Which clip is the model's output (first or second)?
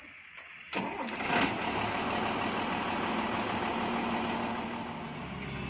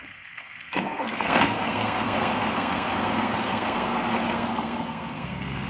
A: second